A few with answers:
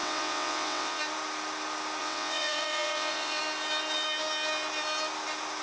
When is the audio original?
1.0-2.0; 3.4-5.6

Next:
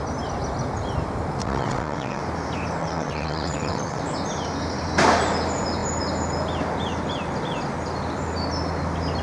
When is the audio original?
0.0-1.4; 2.2-2.8; 4.0-9.2

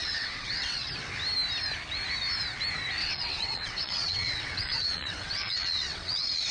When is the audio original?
0.9-3.0

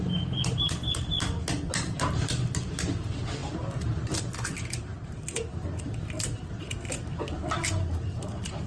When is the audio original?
0.0-8.7

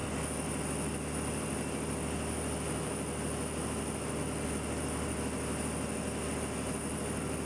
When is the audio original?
0.0-7.5

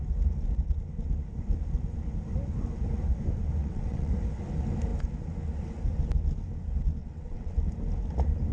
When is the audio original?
0.0-3.6; 4.1-7.0; 7.5-8.5

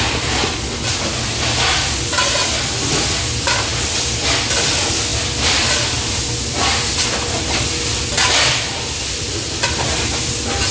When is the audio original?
0.0-10.7

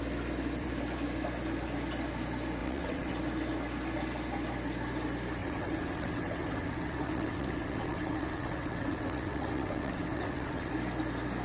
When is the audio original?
0.0-2.6; 3.1-5.4; 10.7-11.4